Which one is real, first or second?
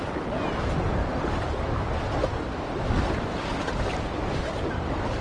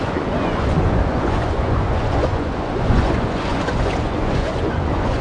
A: first